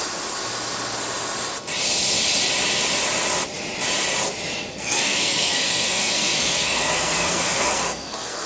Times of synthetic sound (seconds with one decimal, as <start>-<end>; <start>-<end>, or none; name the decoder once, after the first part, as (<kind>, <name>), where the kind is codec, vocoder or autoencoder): 4.7-8.5 (codec, SNAC)